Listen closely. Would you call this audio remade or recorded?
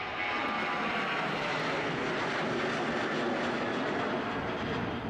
recorded